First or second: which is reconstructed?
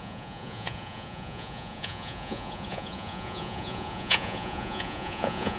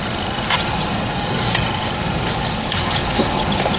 first